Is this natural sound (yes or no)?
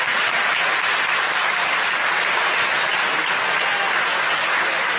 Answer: yes